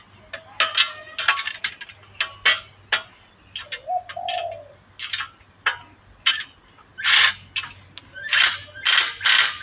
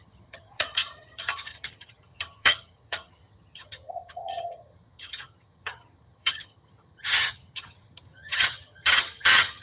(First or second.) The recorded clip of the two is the first